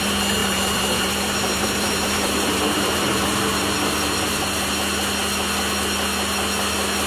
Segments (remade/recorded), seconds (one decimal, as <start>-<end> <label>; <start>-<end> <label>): 0.0-0.4 recorded; 0.4-4.7 remade; 4.7-7.1 recorded